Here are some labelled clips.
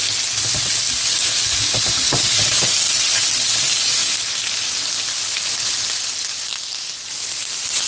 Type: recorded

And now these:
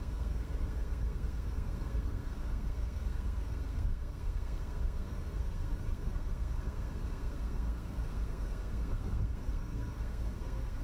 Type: remade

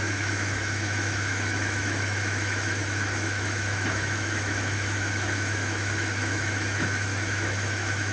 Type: remade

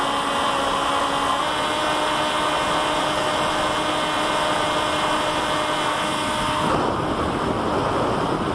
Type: recorded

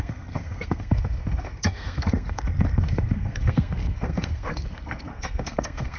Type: remade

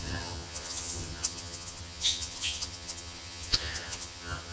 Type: remade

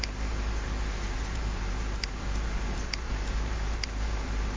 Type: remade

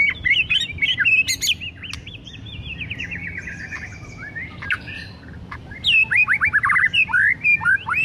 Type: recorded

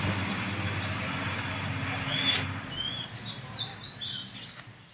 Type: recorded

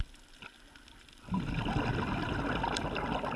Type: recorded